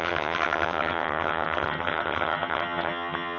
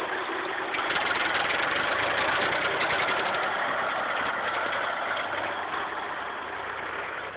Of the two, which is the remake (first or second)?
first